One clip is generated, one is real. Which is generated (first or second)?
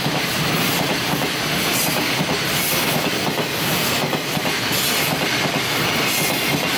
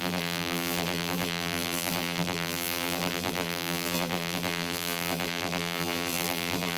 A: second